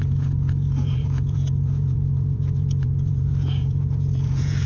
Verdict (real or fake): fake